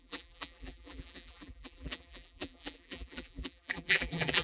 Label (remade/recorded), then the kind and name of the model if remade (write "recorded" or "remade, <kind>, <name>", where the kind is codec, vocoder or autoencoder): remade, vocoder, BigVGAN v2